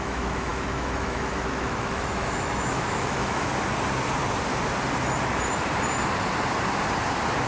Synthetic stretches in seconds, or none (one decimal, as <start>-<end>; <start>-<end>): 0.0-3.5